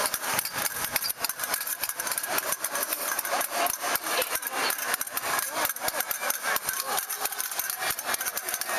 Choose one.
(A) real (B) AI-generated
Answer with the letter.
A